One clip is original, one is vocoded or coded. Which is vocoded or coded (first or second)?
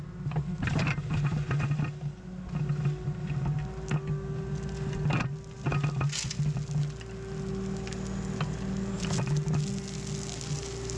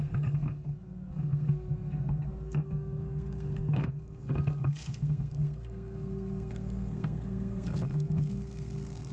second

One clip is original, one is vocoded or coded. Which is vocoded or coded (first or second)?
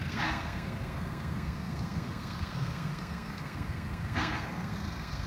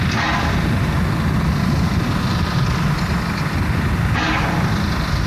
first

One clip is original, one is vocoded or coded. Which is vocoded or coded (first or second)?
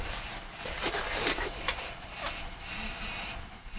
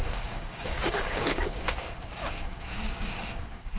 second